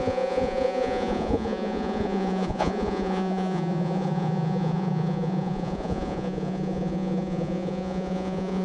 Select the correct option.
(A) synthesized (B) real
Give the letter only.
A